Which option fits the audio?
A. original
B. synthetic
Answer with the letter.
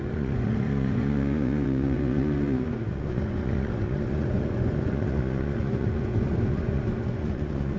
B